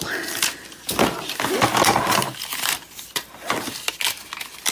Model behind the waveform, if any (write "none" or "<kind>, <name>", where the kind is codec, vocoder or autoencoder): none